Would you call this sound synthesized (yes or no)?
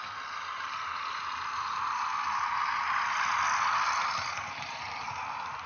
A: no